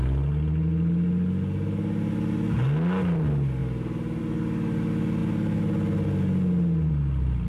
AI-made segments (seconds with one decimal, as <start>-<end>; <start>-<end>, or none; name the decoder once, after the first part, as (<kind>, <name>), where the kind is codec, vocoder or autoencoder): none